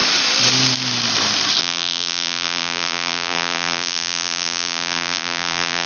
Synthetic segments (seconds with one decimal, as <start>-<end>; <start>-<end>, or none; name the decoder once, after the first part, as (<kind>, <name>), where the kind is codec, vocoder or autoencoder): 1.6-5.9 (vocoder, BigVGAN v2)